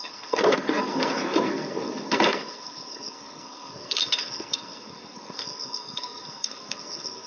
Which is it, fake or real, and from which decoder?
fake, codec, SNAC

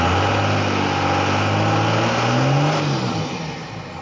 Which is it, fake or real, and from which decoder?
real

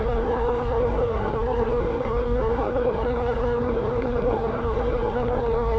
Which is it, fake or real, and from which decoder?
fake, codec, SNAC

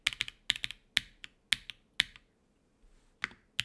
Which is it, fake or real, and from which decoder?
real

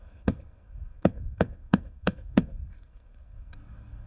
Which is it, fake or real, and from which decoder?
fake, codec, SNAC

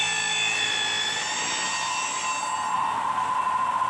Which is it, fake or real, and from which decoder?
real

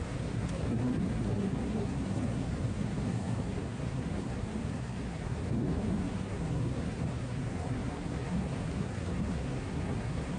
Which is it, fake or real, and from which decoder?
fake, codec, SNAC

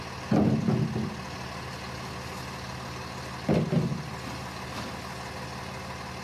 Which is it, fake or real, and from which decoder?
real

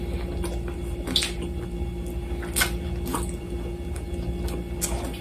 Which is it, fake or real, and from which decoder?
real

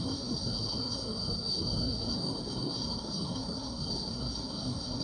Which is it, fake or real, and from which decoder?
fake, codec, SNAC